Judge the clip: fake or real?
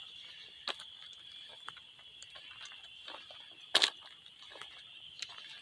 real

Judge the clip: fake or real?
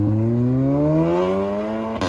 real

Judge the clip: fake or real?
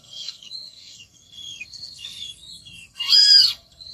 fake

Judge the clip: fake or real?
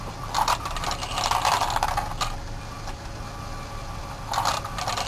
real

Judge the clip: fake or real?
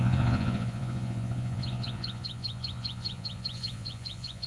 fake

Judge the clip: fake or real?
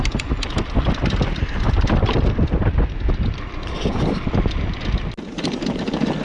real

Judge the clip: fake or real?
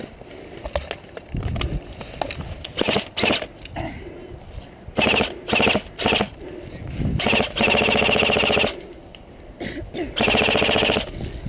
real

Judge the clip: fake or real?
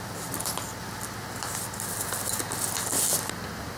real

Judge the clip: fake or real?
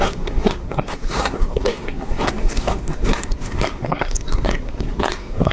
fake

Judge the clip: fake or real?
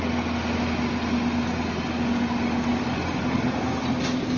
real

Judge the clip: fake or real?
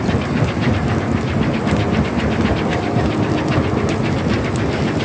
real